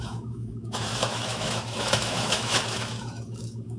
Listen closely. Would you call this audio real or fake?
fake